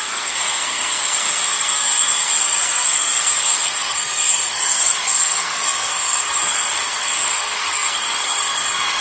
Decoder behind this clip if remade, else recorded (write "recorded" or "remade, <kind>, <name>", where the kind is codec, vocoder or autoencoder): remade, codec, SNAC